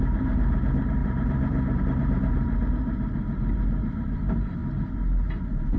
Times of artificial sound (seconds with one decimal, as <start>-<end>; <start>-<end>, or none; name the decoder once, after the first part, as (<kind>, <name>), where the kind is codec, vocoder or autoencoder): 0.0-4.6 (vocoder, BigVGAN v2)